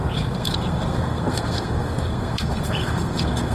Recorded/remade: remade